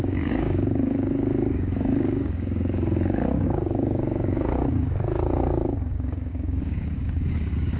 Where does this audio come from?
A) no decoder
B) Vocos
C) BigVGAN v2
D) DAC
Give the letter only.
D